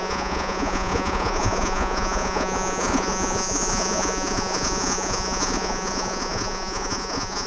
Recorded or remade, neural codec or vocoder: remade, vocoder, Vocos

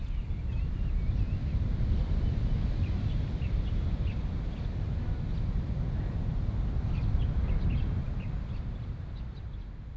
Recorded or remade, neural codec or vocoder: recorded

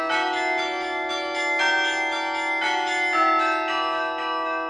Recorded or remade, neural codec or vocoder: recorded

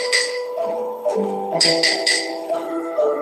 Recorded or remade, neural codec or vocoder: remade, codec, HILCodec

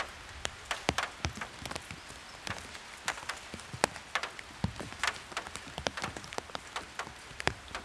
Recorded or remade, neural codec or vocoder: recorded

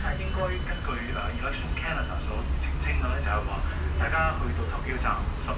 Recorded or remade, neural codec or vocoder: recorded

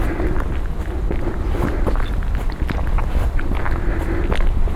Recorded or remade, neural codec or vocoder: recorded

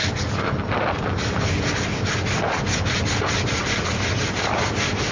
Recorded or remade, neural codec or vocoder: recorded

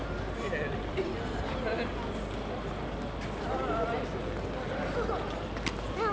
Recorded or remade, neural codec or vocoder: recorded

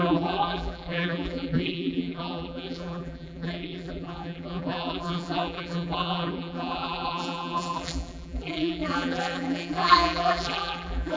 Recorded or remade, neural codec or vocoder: remade, vocoder, BigVGAN v2